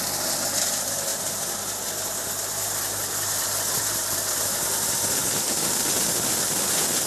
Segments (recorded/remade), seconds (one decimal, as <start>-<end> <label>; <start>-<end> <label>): 0.0-5.2 recorded; 5.2-5.7 remade; 5.7-7.1 recorded